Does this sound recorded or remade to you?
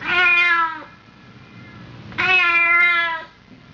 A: recorded